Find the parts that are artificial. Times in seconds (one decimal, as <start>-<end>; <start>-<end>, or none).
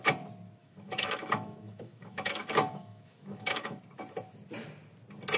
0.6-3.8